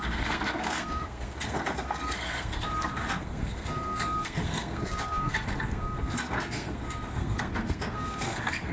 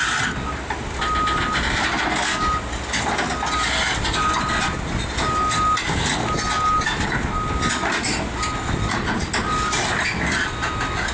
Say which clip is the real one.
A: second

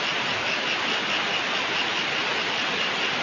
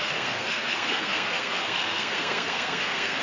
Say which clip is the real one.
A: first